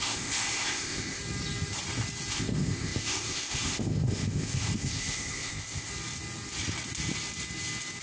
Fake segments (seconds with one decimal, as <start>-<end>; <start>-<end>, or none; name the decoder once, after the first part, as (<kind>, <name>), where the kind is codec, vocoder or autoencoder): 0.0-1.2 (codec, ZipCodec); 2.3-5.9